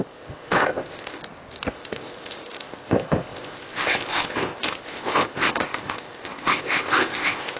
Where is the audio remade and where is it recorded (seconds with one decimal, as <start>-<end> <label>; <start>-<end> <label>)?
0.0-1.2 remade; 1.2-1.7 recorded; 1.7-7.6 remade